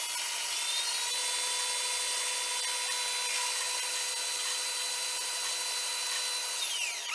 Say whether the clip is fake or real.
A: real